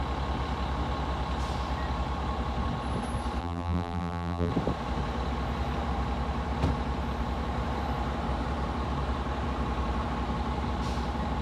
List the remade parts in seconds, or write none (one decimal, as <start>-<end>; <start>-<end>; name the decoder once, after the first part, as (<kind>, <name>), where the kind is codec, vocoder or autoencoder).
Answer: 3.4-4.5 (vocoder, BigVGAN v2)